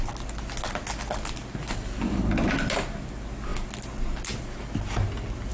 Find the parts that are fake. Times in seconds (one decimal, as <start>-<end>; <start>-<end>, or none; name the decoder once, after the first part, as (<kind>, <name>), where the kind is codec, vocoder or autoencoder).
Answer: none